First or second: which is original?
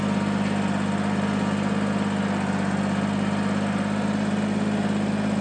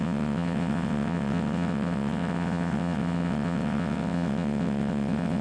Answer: first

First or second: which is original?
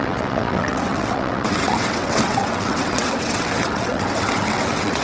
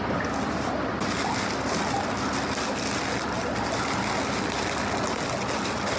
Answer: second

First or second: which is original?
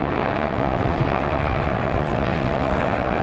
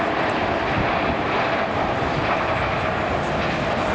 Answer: second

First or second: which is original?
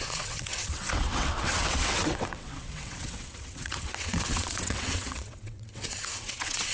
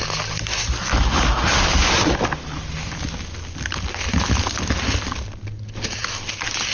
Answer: second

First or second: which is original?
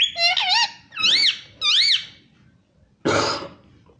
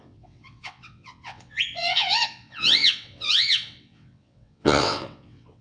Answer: first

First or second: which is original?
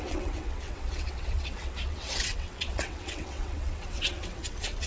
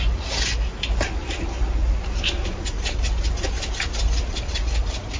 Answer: second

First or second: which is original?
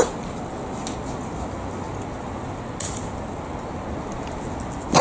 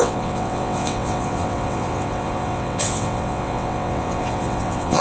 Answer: first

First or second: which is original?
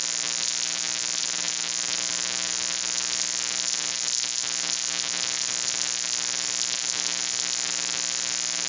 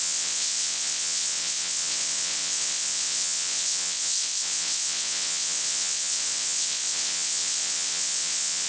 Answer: first